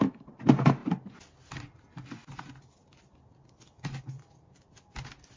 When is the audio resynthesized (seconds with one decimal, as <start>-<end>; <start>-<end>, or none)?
none